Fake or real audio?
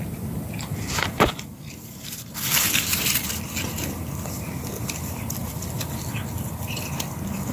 fake